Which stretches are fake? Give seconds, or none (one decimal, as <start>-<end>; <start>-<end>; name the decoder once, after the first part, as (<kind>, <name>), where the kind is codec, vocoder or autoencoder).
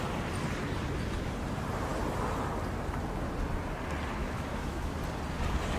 4.2-5.0 (autoencoder, DAC-VAE)